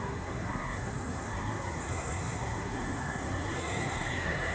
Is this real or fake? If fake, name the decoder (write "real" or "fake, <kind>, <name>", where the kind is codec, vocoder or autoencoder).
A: fake, codec, SNAC